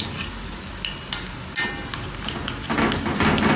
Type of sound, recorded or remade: recorded